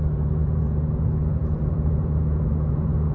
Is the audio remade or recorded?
remade